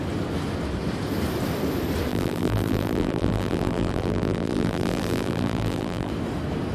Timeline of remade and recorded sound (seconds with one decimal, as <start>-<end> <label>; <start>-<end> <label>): 0.0-2.1 recorded; 2.1-6.1 remade; 6.1-6.7 recorded